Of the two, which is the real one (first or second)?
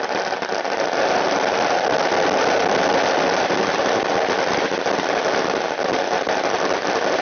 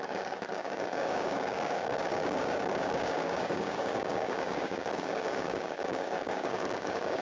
first